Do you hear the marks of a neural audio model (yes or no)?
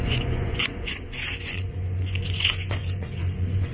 yes